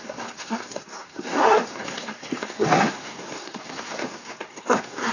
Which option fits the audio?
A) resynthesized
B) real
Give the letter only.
A